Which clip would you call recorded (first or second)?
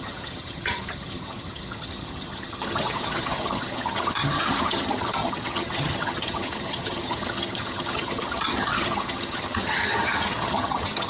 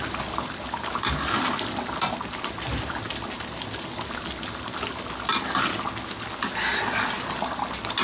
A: second